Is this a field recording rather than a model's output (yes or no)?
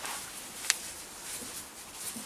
yes